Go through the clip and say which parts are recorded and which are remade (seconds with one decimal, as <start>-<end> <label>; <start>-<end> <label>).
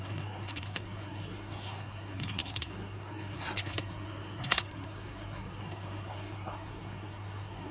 0.0-7.7 remade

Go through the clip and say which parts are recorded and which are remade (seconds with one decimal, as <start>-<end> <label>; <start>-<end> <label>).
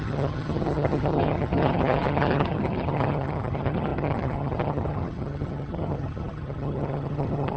0.0-7.6 remade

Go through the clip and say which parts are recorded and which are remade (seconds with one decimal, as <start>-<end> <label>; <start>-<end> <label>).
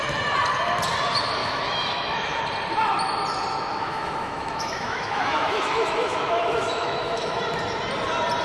0.0-1.4 recorded; 1.4-2.4 remade; 2.4-3.7 recorded; 3.7-7.4 remade; 7.4-8.4 recorded